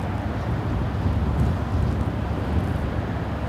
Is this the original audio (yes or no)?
yes